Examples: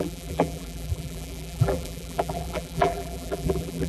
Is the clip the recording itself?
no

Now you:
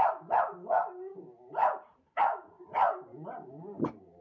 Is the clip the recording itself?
no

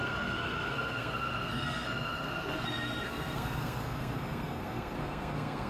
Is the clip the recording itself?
no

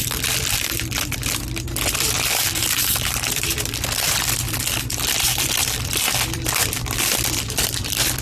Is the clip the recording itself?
no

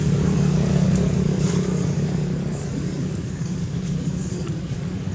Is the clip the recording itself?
no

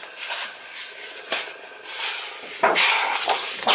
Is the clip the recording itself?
yes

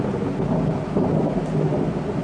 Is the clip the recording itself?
yes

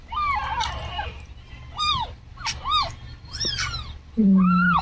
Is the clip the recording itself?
yes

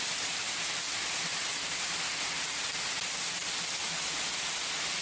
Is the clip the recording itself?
yes